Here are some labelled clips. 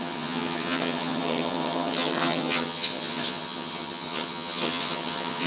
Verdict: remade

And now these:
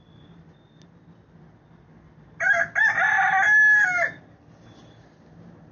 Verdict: recorded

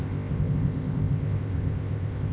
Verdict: remade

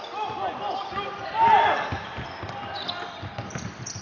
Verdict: recorded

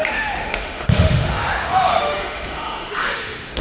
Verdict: remade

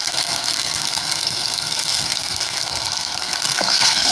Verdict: remade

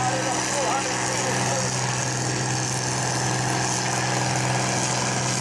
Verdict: recorded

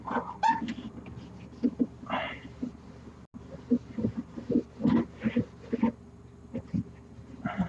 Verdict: recorded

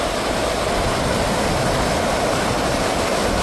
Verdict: recorded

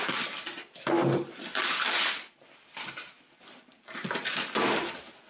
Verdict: recorded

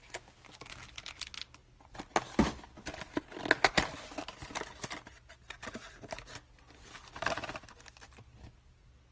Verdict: recorded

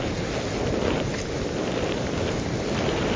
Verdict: recorded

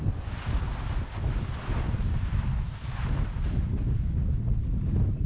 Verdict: recorded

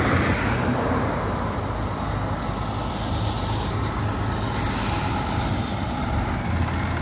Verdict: recorded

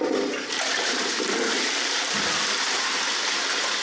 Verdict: remade